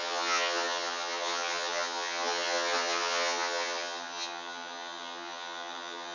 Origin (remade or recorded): remade